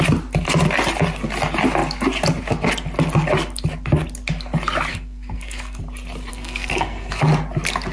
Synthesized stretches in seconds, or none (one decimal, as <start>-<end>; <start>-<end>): 4.9-5.8; 6.3-7.2